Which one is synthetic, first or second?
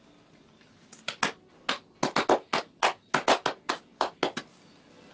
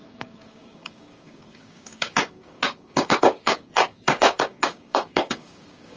second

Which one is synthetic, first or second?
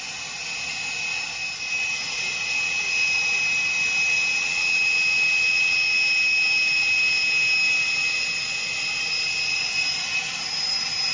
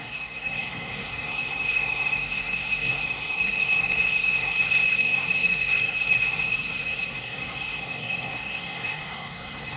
second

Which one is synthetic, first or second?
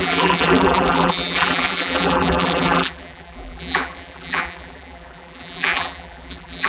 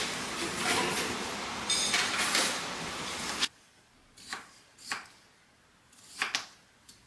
first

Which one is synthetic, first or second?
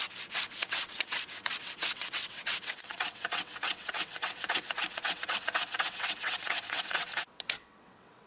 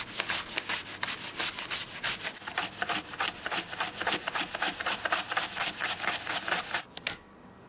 first